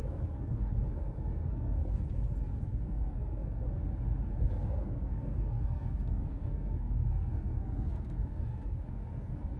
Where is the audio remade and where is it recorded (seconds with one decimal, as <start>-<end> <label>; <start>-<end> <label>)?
0.0-3.6 remade; 3.6-4.4 recorded; 4.4-9.6 remade